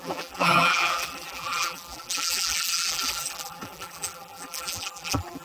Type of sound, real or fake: fake